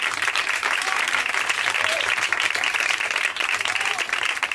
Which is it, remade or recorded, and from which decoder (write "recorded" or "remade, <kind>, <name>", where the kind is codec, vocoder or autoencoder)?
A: remade, vocoder, BigVGAN v2